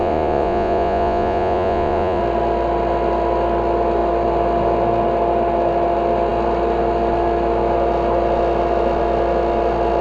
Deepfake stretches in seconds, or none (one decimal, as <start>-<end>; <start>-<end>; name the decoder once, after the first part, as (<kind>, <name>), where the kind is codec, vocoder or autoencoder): 0.0-2.2 (vocoder, Vocos)